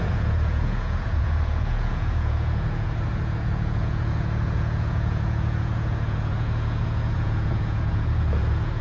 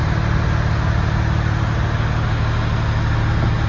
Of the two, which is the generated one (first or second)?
first